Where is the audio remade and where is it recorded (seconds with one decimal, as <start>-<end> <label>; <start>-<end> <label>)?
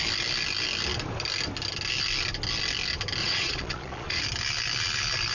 0.0-3.2 recorded; 3.2-4.2 remade; 4.2-5.3 recorded